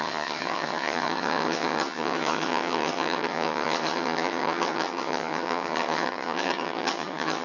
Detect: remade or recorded remade